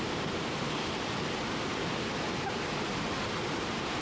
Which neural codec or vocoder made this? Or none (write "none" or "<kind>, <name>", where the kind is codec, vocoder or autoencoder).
vocoder, BigVGAN v2